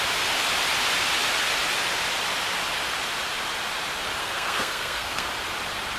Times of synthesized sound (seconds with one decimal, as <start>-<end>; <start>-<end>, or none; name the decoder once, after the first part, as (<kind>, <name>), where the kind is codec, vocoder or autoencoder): 4.2-5.3 (codec, SNAC)